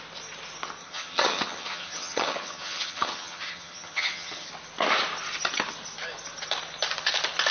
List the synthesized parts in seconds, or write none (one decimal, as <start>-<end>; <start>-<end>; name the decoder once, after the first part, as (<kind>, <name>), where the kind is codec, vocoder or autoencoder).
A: 0.8-4.5 (vocoder, HiFi-GAN)